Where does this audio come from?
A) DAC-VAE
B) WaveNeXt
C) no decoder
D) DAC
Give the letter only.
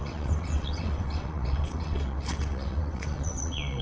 B